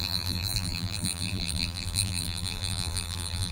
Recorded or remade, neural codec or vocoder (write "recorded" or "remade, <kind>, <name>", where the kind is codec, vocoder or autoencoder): remade, vocoder, BigVGAN v2